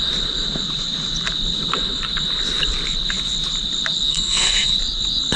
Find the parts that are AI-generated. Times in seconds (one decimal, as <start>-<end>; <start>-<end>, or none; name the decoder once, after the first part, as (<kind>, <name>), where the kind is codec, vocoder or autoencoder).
4.1-4.7 (codec, SNAC)

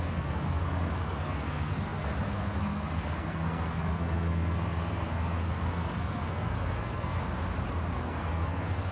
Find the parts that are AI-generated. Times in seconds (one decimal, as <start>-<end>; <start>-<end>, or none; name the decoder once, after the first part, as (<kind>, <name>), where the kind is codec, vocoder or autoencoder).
0.0-7.2 (codec, SNAC); 7.9-8.9

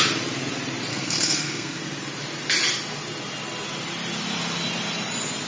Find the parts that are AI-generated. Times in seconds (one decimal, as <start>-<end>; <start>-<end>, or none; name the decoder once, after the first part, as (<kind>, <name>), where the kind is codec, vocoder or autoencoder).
0.9-1.8 (codec, SNAC)